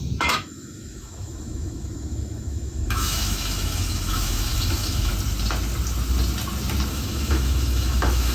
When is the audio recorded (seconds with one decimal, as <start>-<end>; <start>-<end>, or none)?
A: 5.1-6.9